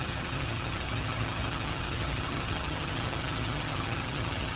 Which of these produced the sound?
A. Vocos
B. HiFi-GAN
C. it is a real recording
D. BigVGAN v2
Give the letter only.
B